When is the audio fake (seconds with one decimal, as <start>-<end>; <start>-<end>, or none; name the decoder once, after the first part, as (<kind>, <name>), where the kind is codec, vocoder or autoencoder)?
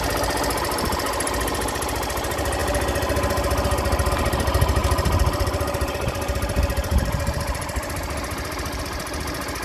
4.8-8.8 (vocoder, BigVGAN v2)